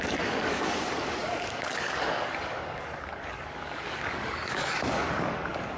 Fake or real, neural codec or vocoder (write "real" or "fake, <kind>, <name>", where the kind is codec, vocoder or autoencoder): fake, codec, DAC